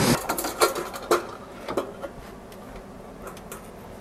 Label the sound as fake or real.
real